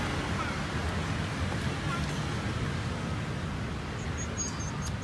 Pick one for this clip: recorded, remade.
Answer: recorded